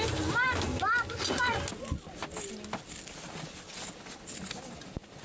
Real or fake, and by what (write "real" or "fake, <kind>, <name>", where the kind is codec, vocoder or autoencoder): real